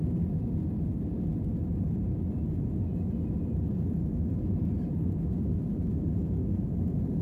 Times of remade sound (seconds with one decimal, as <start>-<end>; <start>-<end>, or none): 6.4-7.2

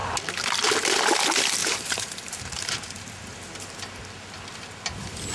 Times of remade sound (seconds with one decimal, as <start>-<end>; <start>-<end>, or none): 1.6-2.7

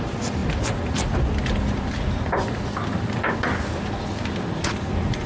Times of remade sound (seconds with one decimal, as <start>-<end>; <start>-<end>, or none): none

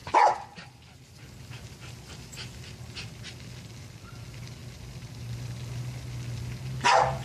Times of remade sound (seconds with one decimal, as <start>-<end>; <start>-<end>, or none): none